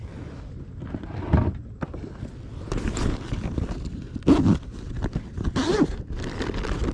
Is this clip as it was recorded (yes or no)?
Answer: yes